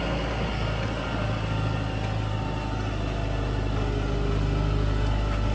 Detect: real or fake real